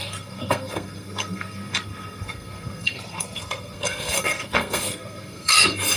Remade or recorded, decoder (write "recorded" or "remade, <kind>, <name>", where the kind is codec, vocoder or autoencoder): remade, codec, SNAC